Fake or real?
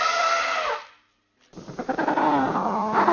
fake